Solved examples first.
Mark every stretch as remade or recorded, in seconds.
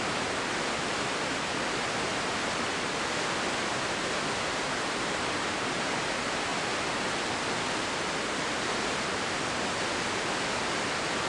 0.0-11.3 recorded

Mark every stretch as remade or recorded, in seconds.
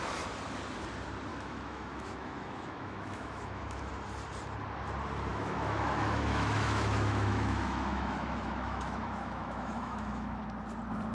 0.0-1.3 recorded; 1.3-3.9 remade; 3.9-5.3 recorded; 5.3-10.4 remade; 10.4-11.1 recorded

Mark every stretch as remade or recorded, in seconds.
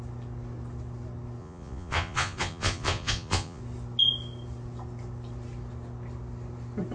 0.0-1.4 recorded; 1.4-3.6 remade; 3.6-6.9 recorded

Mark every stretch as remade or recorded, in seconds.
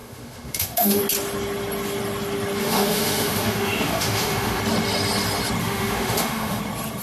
0.0-1.0 remade; 1.0-2.6 recorded; 2.6-4.6 remade; 4.6-5.6 recorded; 5.6-6.6 remade; 6.6-7.0 recorded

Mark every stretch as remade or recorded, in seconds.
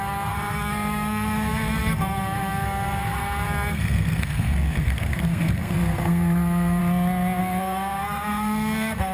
0.0-6.8 remade; 6.8-7.4 recorded; 7.4-9.1 remade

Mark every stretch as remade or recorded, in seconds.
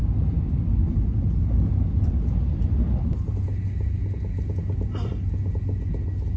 0.0-6.4 recorded